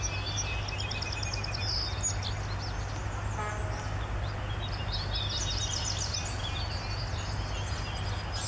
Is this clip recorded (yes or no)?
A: yes